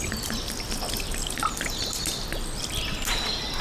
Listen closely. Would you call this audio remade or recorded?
recorded